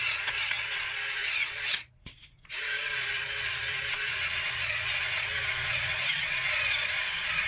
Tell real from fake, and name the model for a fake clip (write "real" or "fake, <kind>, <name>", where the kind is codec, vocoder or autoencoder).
fake, vocoder, Vocos